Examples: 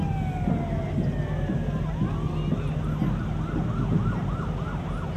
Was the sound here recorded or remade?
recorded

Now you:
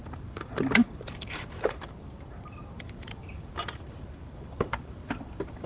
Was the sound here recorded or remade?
remade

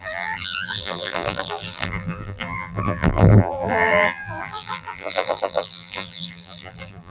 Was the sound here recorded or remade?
remade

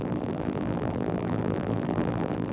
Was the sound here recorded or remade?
remade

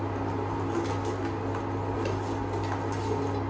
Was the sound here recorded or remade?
recorded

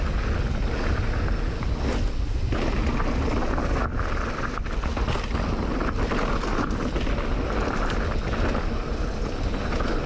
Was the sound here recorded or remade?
recorded